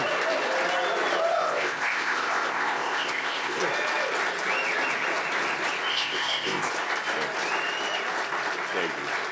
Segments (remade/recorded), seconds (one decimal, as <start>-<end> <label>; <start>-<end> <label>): 0.0-1.3 recorded; 1.3-3.6 remade; 3.6-5.9 recorded; 5.9-6.7 remade; 6.7-9.3 recorded